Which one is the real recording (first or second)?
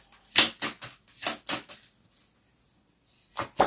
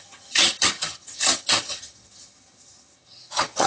first